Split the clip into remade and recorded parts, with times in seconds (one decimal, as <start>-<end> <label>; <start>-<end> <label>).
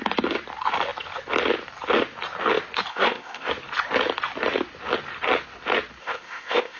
0.0-2.9 recorded; 2.9-3.5 remade; 3.5-6.0 recorded; 6.0-6.8 remade